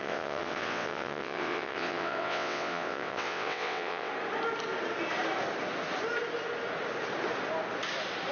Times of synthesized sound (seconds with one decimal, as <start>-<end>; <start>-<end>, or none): 0.0-4.1